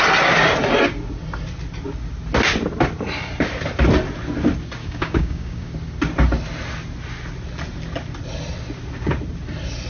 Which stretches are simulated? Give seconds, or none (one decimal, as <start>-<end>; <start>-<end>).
4.8-5.7